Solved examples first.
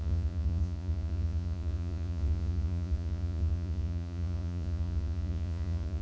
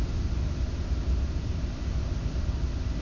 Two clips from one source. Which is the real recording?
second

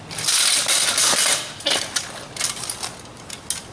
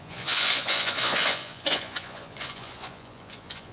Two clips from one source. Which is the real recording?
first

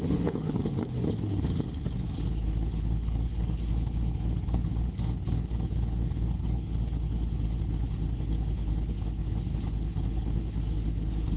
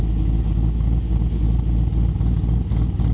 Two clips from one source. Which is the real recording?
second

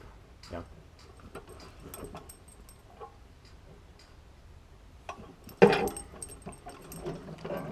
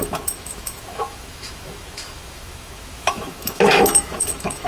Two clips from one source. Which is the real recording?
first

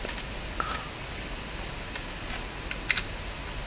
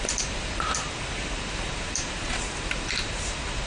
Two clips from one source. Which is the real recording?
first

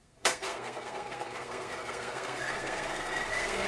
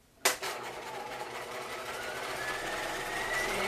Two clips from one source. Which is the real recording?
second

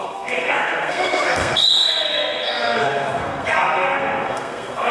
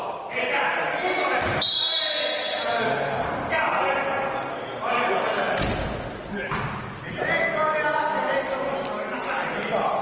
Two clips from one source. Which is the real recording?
second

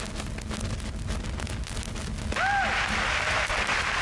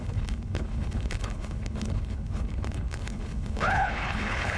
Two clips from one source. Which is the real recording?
first